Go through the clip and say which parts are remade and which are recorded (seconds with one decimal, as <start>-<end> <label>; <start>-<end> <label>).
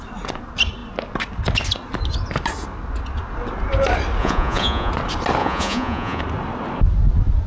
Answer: 0.0-4.2 recorded; 4.2-4.9 remade; 4.9-5.4 recorded; 5.4-6.2 remade; 6.2-7.5 recorded